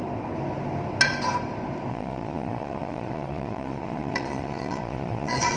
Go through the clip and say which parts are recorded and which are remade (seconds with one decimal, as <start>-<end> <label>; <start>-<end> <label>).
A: 0.0-1.9 recorded; 1.9-5.6 remade